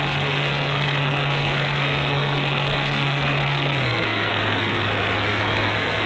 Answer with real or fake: fake